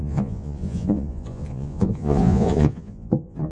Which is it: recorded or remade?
remade